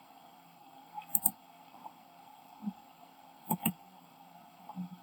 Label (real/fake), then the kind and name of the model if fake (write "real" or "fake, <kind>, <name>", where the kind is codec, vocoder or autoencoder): fake, codec, SNAC